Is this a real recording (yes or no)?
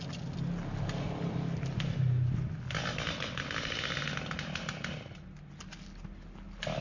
yes